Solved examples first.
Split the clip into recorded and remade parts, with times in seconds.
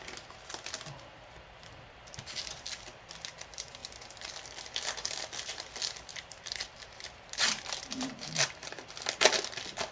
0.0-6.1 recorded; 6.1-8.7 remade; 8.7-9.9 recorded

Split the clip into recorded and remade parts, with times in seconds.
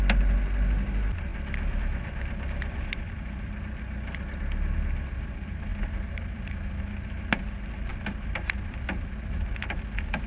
0.0-1.3 recorded; 1.3-3.6 remade; 3.6-5.7 recorded; 5.7-6.8 remade; 6.8-7.9 recorded; 7.9-8.8 remade; 8.8-10.3 recorded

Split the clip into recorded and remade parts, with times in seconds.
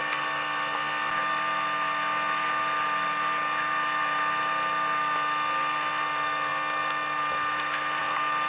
0.0-8.5 recorded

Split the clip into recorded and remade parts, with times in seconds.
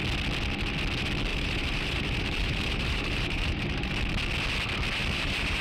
0.0-1.3 recorded; 1.3-3.9 remade; 3.9-5.0 recorded; 5.0-5.6 remade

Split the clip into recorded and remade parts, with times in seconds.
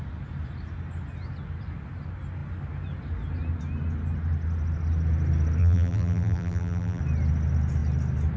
0.0-5.6 recorded; 5.6-7.0 remade; 7.0-8.4 recorded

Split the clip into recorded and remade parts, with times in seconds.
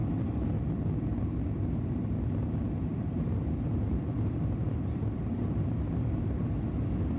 0.0-1.9 remade; 1.9-2.9 recorded; 2.9-6.4 remade; 6.4-7.2 recorded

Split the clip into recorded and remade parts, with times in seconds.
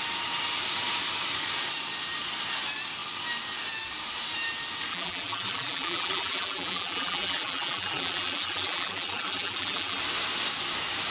0.0-4.9 recorded; 4.9-10.0 remade; 10.0-11.1 recorded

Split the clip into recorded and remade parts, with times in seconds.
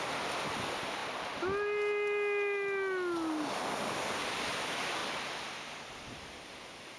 0.0-7.0 recorded